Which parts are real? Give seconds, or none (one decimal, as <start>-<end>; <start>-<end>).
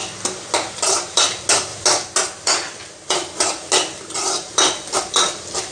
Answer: 0.0-5.7